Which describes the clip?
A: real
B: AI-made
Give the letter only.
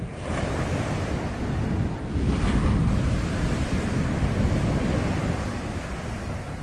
A